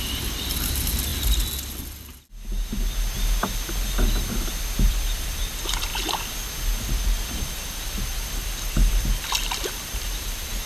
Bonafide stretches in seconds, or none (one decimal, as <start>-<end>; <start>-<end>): 1.1-4.9; 5.9-6.8